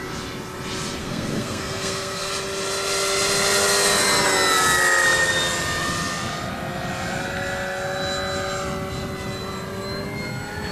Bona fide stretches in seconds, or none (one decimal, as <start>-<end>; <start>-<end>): 0.0-1.0; 2.3-10.7